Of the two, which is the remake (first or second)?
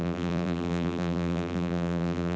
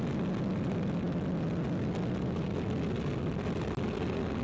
first